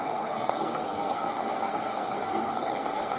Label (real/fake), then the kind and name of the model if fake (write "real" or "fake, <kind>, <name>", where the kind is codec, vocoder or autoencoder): fake, codec, SNAC